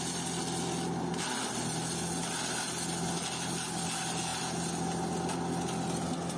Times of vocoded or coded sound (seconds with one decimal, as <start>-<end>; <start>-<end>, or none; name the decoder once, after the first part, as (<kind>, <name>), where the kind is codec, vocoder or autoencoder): none